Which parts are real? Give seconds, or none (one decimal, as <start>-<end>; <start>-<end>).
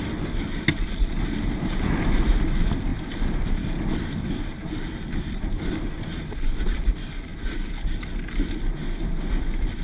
0.0-9.8